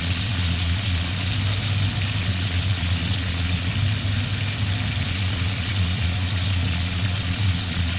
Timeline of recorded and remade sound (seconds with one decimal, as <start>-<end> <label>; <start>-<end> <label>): 0.0-1.3 remade; 1.3-2.2 recorded; 2.2-3.7 remade; 3.7-5.1 recorded; 5.1-8.0 remade